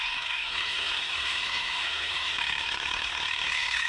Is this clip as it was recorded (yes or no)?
no